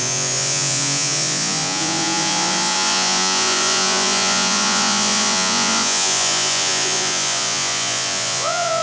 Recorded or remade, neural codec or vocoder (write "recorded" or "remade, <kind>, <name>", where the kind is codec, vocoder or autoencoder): remade, vocoder, Vocos